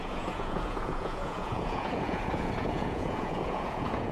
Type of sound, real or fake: fake